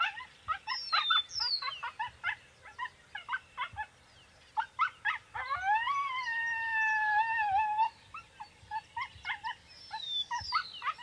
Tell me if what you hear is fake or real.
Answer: real